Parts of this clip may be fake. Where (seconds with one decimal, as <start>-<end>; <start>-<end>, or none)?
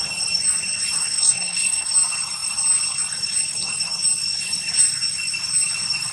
1.0-1.9